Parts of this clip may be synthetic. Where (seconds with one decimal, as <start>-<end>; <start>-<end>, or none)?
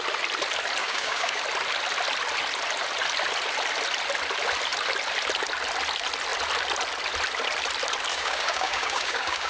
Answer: 0.8-1.4; 8.1-9.5